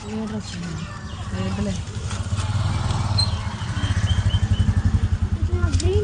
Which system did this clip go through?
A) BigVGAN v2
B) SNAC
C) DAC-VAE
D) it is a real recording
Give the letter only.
D